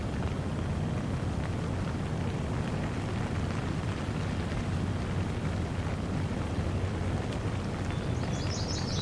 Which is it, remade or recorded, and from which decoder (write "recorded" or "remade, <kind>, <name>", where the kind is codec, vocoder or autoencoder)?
recorded